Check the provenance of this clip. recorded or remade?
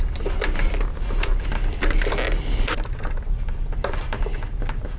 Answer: recorded